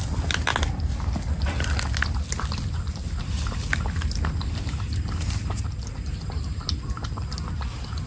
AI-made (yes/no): no